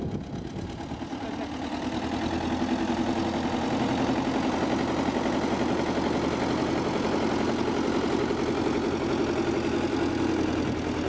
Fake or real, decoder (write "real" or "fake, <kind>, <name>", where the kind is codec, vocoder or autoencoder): real